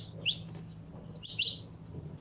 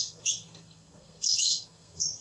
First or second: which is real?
first